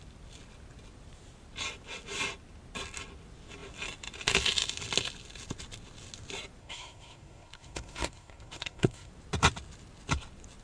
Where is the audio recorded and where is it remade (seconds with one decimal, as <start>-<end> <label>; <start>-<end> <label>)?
0.0-6.6 recorded; 6.6-9.1 remade; 9.1-10.6 recorded